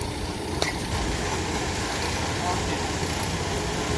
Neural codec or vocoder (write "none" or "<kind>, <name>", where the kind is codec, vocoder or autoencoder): none